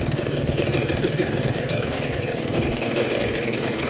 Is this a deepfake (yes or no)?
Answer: yes